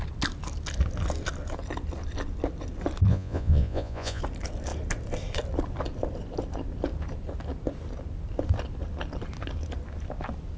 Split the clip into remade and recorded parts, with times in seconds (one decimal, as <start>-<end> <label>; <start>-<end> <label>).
0.0-3.1 recorded; 3.1-4.2 remade; 4.2-10.6 recorded